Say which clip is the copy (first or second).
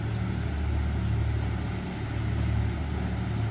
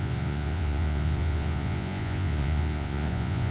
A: second